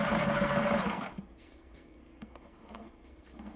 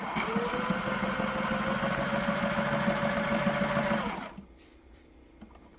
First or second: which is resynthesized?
first